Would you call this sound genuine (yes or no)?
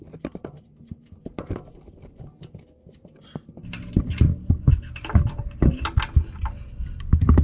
yes